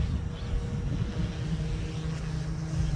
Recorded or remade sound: recorded